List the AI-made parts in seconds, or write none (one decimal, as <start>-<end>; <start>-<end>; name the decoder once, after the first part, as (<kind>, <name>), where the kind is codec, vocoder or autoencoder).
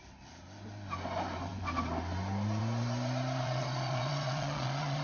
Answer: 3.4-5.0 (vocoder, Vocos)